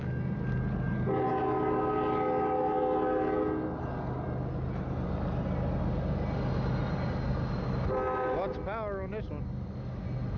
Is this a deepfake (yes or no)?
no